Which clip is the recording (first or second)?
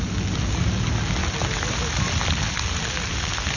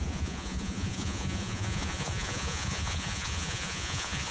first